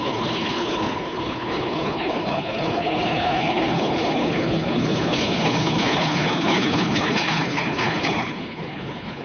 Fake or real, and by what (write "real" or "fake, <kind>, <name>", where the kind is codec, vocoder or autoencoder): fake, codec, HILCodec